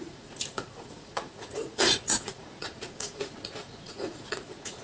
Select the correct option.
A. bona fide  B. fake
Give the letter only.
B